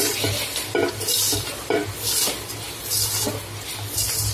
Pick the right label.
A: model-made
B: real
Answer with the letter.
B